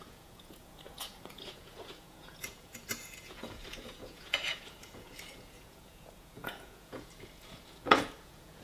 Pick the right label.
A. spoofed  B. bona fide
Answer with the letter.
A